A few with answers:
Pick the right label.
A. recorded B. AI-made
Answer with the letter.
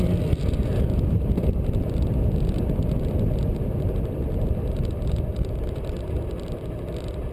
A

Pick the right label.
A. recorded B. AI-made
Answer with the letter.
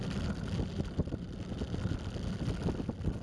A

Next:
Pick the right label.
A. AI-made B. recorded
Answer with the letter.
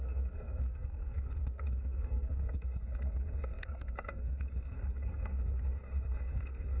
A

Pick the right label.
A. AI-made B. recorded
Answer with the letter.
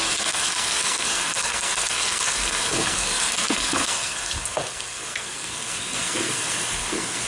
A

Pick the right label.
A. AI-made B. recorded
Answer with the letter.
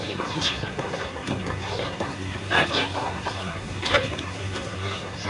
A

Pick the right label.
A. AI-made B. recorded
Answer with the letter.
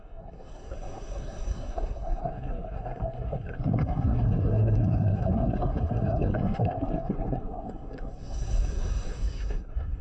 A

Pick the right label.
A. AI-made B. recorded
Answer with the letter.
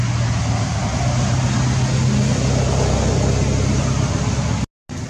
B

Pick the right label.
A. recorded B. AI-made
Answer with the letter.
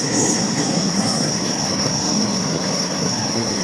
B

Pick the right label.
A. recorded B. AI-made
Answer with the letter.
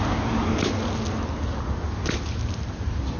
A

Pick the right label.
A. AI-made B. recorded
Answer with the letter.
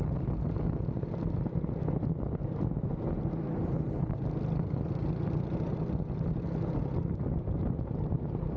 B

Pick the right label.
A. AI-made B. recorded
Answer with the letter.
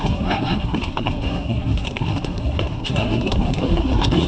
A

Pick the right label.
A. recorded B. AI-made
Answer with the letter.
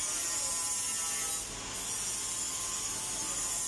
A